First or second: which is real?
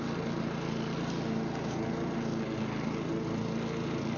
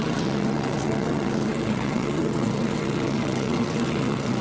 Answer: first